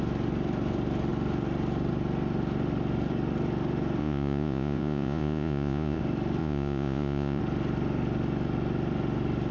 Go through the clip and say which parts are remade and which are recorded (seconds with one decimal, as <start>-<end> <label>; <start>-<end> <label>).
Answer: 0.0-4.0 recorded; 4.0-6.0 remade; 6.0-6.4 recorded; 6.4-7.4 remade; 7.4-9.5 recorded